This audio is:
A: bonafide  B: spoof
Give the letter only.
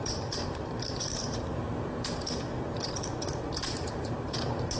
B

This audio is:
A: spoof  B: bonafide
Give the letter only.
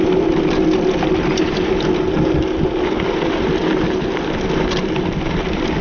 B